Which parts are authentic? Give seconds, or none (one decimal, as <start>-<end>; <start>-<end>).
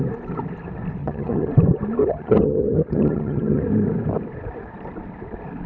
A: 0.0-1.0; 1.5-2.0; 3.6-5.7